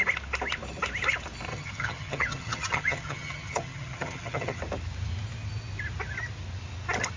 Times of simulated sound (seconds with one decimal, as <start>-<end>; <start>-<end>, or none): 1.5-4.6